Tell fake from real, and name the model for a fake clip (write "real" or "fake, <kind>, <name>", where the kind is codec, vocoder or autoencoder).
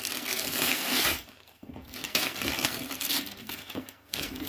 fake, codec, SNAC